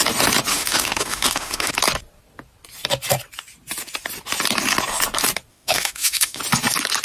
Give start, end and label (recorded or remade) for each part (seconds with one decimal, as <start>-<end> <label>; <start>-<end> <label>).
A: 0.0-0.5 recorded; 0.5-1.7 remade; 1.7-5.5 recorded; 5.5-6.4 remade; 6.4-7.0 recorded